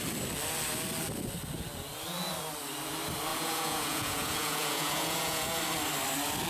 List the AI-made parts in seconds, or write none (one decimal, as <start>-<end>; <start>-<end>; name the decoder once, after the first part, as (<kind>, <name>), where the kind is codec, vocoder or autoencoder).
3.3-5.6 (vocoder, Vocos)